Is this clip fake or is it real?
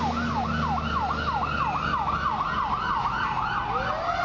real